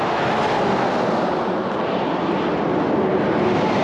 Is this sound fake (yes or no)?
no